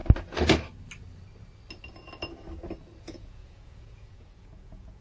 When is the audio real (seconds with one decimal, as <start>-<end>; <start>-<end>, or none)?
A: 0.0-3.0